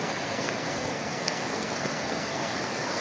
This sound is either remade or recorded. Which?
remade